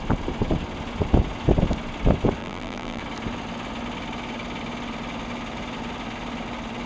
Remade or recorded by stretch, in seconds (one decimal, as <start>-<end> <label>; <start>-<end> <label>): 0.0-2.4 recorded; 2.4-3.0 remade; 3.0-6.9 recorded

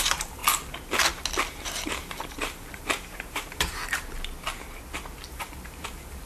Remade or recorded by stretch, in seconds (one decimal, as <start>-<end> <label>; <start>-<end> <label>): 0.0-0.4 remade; 0.4-1.5 recorded; 1.5-3.8 remade; 3.8-5.3 recorded; 5.3-6.3 remade